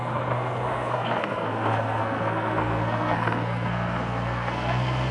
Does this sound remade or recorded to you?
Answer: remade